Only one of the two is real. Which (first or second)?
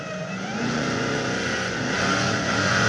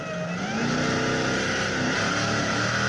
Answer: second